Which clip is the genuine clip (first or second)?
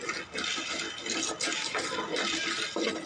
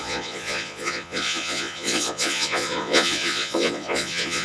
first